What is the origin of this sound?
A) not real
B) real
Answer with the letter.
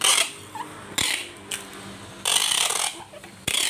B